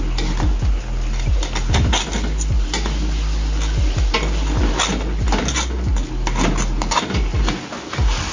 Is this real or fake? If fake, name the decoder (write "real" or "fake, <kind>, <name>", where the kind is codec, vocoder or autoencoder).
real